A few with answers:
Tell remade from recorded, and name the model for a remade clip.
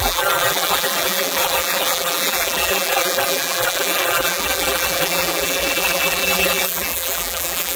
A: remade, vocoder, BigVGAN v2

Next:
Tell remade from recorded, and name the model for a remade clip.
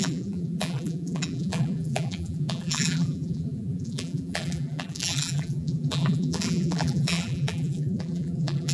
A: remade, vocoder, BigVGAN v2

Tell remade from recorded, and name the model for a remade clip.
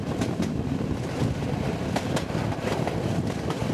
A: recorded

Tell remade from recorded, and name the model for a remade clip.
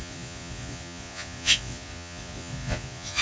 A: remade, vocoder, Vocos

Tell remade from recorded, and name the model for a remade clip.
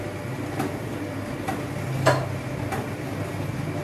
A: recorded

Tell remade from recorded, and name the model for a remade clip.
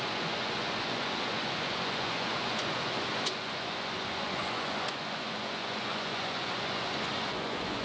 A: remade, vocoder, Vocos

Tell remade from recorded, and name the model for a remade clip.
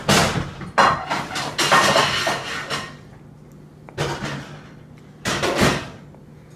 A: recorded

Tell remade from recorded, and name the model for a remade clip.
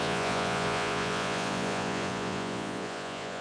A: remade, vocoder, Vocos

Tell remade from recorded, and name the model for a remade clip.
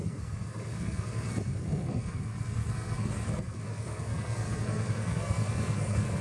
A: remade, codec, SNAC